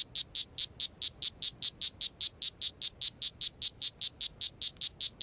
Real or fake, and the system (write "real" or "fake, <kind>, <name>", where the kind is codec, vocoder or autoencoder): real